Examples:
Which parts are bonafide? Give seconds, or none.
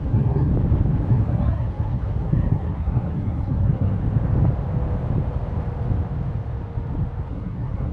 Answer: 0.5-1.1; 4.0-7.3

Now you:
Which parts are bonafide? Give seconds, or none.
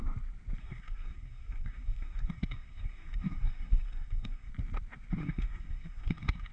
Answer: 0.0-0.6; 4.5-5.2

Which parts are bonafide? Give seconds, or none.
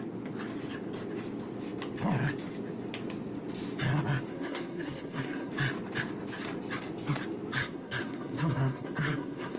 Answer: 0.0-4.3; 5.5-7.6